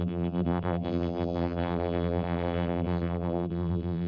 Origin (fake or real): fake